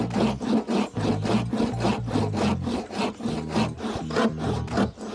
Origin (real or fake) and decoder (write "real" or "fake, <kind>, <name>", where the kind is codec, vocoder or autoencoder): real